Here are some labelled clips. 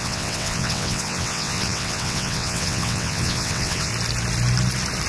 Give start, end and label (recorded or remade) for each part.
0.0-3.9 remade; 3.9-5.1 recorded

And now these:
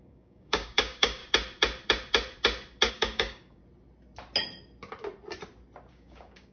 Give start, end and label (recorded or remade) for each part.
0.0-1.2 remade; 1.2-2.9 recorded; 2.9-3.6 remade; 3.6-5.9 recorded; 5.9-6.5 remade

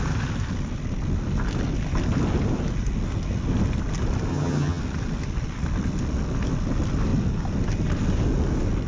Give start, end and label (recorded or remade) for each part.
0.0-4.3 recorded; 4.3-4.8 remade; 4.8-8.9 recorded